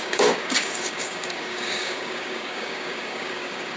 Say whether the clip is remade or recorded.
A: remade